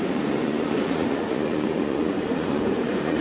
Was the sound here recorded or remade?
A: remade